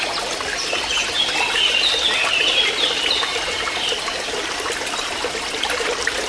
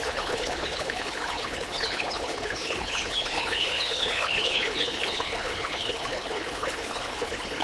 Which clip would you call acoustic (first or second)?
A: first